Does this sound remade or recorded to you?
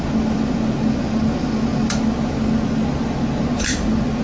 recorded